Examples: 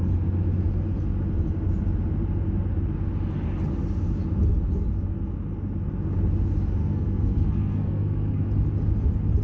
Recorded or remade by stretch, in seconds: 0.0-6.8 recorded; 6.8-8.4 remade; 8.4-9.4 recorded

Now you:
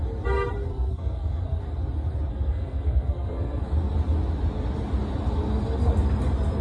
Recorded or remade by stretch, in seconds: 0.0-0.7 recorded; 0.7-1.6 remade; 1.6-2.3 recorded; 2.3-3.6 remade; 3.6-6.6 recorded

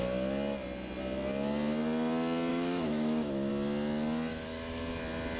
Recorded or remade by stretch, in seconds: 0.0-2.5 recorded; 2.5-3.5 remade; 3.5-4.3 recorded; 4.3-4.8 remade; 4.8-5.4 recorded

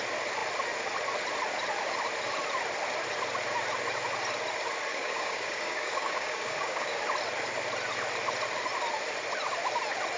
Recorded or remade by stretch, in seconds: 0.0-4.9 recorded; 4.9-7.0 remade; 7.0-10.2 recorded

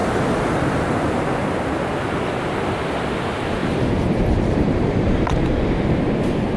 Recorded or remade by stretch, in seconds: 0.0-0.8 remade; 0.8-3.6 recorded; 3.6-5.4 remade; 5.4-6.6 recorded